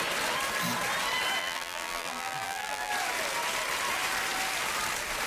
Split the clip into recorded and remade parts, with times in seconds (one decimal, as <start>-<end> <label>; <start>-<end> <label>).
0.0-1.4 recorded; 1.4-2.9 remade; 2.9-5.3 recorded